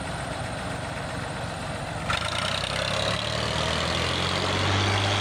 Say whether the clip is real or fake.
real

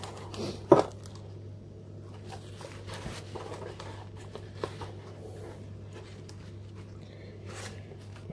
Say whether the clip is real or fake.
real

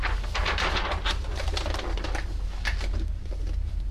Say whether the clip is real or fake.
real